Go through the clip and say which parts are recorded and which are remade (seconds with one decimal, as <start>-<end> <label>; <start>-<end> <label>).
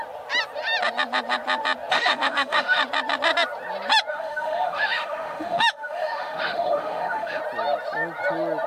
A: 0.0-1.9 recorded; 1.9-2.8 remade; 2.8-4.1 recorded; 4.1-7.4 remade; 7.4-8.7 recorded